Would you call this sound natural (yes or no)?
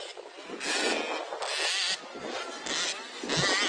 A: yes